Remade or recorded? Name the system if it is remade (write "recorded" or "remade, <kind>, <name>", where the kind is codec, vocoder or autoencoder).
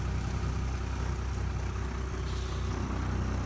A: recorded